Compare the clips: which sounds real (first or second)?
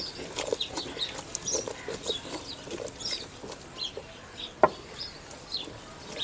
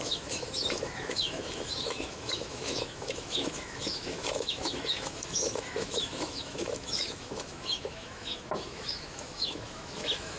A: first